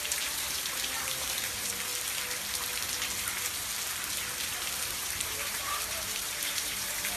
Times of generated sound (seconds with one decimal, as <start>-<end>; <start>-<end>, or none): 0.0-1.9; 4.4-7.2